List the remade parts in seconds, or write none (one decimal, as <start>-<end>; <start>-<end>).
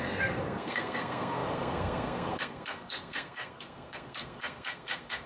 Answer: 0.0-5.3